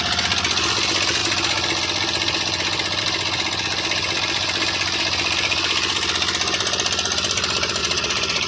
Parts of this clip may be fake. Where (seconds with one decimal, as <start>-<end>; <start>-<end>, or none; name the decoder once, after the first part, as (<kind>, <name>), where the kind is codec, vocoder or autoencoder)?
7.8-8.5 (vocoder, Vocos)